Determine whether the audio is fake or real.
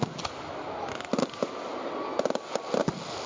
real